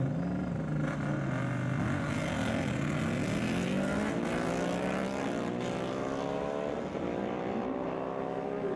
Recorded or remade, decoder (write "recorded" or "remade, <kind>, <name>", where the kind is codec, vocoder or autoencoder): recorded